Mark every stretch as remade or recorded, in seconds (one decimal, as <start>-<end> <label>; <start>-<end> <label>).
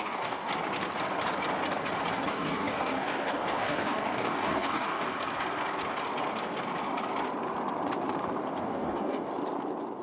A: 0.0-0.5 remade; 0.5-2.3 recorded; 2.3-5.1 remade; 5.1-8.5 recorded; 8.5-9.3 remade; 9.3-10.0 recorded